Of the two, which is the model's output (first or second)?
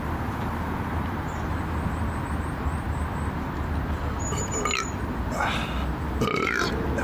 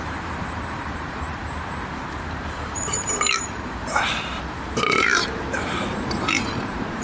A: second